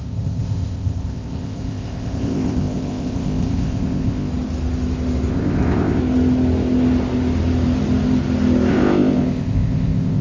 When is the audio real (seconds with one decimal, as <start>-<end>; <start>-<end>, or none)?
4.3-5.3; 6.0-8.7